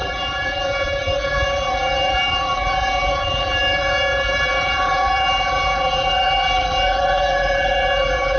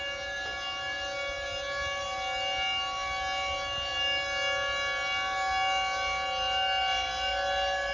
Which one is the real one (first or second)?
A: second